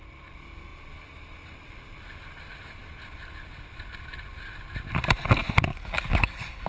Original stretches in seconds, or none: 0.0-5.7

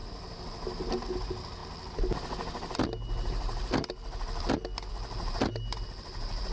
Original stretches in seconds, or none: 0.0-6.5

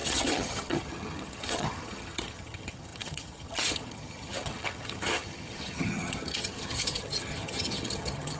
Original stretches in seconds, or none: none

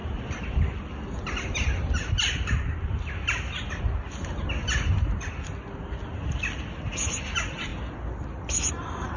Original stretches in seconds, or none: 0.0-9.2

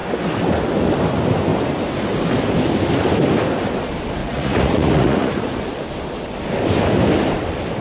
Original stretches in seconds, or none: 0.0-4.2; 5.7-7.8